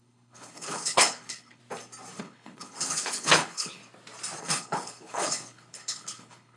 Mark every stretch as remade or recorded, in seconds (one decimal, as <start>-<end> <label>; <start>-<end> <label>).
0.0-1.6 remade; 1.6-2.2 recorded; 2.2-3.8 remade; 3.8-4.4 recorded; 4.4-6.6 remade